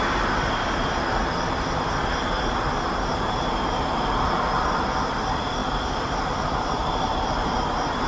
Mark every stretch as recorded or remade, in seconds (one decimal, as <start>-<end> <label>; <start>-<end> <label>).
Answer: 0.0-8.1 recorded